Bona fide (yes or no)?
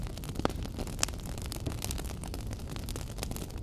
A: yes